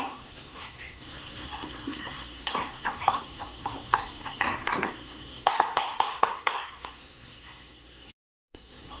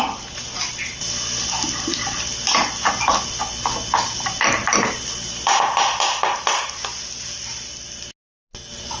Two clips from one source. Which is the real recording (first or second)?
second